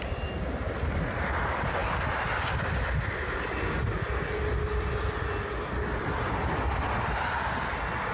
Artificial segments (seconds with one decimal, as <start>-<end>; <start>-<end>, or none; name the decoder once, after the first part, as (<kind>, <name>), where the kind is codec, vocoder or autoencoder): none